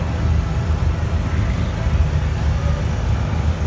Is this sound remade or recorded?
recorded